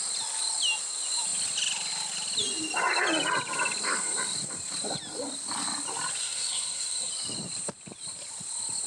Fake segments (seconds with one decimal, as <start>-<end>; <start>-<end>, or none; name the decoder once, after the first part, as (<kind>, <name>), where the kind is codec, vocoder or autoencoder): 6.2-7.1 (codec, SNAC)